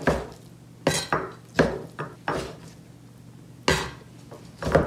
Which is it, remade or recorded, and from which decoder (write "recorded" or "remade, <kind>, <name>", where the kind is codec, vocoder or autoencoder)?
recorded